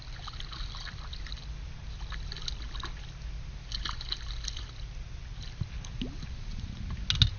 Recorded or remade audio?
recorded